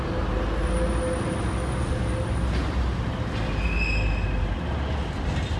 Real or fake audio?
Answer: real